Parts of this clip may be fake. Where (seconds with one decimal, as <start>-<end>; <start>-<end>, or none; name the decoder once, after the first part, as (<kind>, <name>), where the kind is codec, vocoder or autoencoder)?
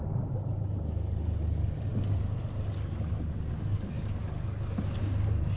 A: none